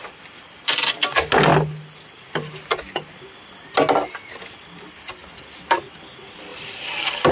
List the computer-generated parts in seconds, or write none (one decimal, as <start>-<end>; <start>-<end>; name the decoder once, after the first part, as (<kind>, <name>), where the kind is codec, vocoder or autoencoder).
none